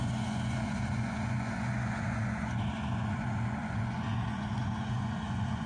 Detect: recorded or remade remade